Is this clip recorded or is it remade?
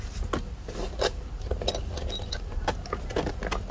recorded